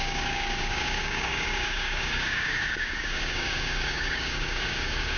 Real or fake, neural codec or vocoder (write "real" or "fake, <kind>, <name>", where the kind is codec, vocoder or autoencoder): fake, codec, DAC